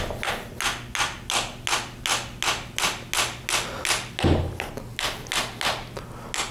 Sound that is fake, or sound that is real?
real